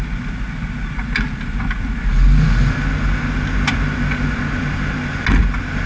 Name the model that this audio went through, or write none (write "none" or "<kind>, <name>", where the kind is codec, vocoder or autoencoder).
none